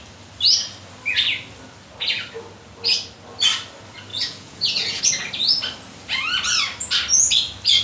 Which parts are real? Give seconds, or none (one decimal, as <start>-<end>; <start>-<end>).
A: 0.0-4.1; 5.0-7.8